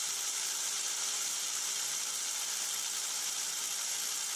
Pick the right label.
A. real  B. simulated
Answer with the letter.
B